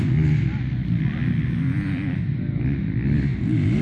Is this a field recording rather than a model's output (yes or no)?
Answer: yes